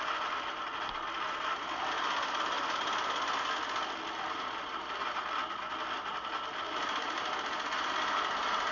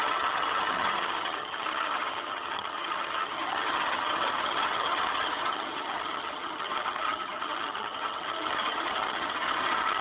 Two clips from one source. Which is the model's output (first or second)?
second